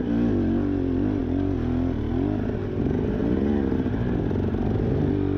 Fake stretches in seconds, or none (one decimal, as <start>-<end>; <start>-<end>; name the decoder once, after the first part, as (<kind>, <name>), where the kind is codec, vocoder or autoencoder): none